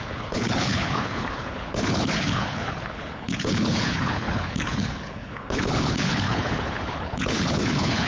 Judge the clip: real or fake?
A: fake